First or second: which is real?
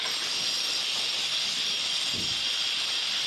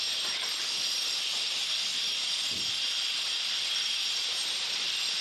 first